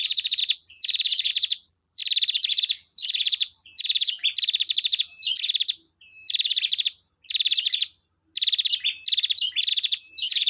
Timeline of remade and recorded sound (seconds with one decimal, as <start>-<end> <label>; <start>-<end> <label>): 0.0-2.0 remade; 2.0-2.6 recorded; 2.6-4.2 remade; 4.2-4.8 recorded; 4.8-5.2 remade; 5.2-9.7 recorded; 9.7-10.5 remade